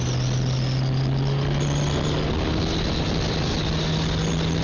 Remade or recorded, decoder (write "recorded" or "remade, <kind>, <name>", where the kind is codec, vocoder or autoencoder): recorded